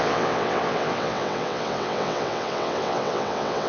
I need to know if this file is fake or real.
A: fake